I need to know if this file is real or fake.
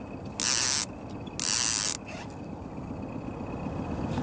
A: real